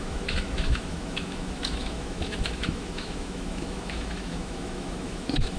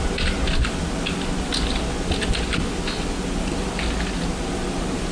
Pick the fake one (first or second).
first